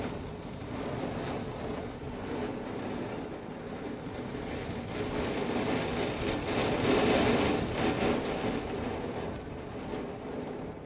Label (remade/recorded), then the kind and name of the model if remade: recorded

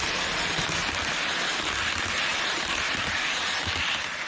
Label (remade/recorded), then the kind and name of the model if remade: recorded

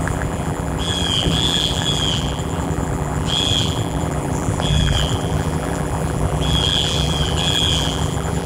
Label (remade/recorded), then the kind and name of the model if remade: remade, vocoder, BigVGAN v2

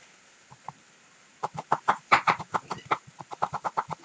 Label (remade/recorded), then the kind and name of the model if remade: remade, vocoder, BigVGAN v2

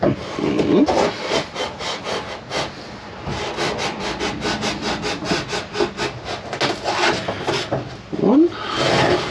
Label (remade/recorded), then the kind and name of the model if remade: recorded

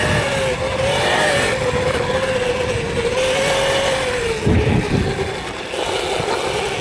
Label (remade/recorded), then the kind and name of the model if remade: recorded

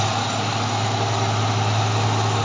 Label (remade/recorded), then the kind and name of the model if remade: recorded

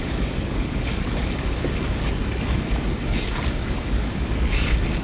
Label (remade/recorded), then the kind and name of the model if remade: remade, codec, DAC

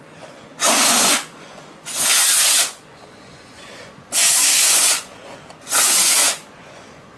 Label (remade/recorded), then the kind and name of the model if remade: remade, vocoder, Vocos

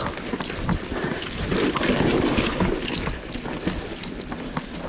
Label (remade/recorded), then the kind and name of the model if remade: recorded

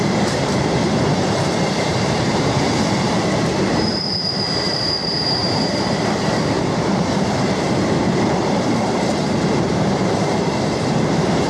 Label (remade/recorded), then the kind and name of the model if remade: remade, vocoder, BigVGAN v2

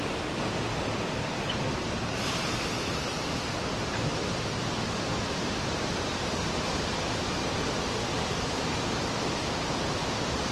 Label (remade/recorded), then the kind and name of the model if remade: remade, vocoder, BigVGAN v2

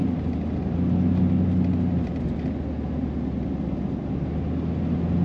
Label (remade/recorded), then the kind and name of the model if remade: recorded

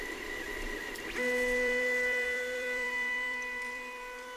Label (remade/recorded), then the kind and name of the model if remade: remade, vocoder, BigVGAN v2